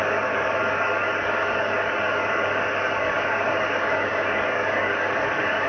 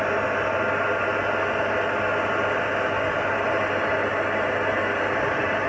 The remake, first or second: first